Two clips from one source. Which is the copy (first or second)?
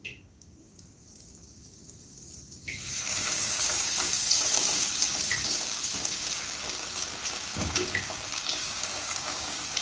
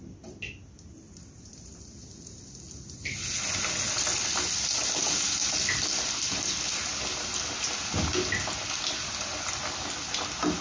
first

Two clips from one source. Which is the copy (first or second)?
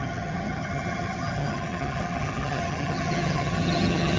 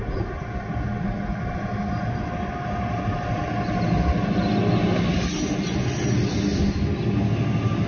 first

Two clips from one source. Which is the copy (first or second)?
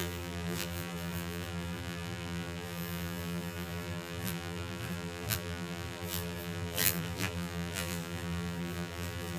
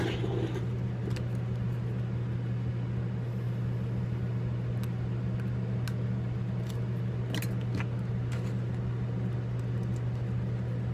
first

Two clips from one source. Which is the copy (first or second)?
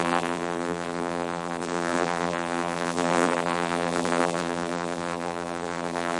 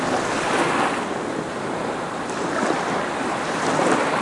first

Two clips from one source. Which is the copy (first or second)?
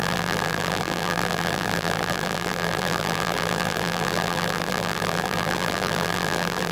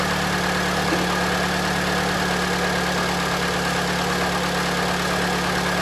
first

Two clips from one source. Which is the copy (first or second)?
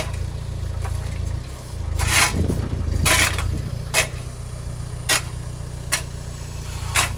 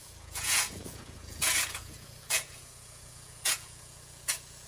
second